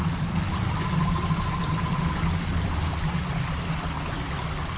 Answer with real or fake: real